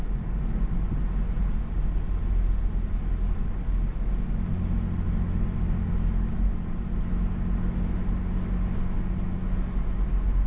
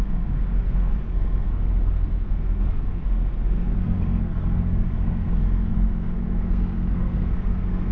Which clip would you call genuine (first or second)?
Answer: first